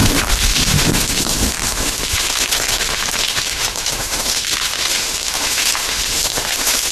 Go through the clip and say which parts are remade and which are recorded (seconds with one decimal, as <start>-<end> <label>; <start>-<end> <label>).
0.0-6.9 remade